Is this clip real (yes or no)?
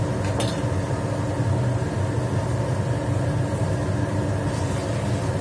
yes